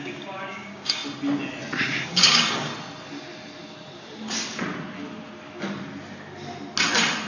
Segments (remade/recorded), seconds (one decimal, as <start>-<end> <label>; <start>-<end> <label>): 0.0-1.0 remade; 1.0-2.0 recorded; 2.0-2.7 remade; 2.7-7.3 recorded